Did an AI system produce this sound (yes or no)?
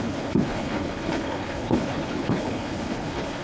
yes